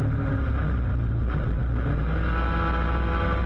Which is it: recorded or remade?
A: recorded